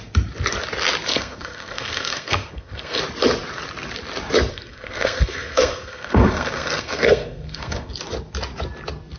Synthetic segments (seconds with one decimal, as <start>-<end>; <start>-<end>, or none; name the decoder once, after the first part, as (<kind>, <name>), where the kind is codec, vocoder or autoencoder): 1.1-3.0 (codec, SNAC); 4.5-7.9